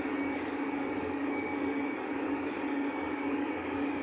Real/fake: fake